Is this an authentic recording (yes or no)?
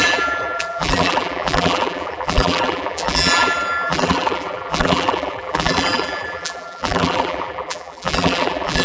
no